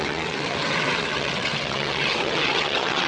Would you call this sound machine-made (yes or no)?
yes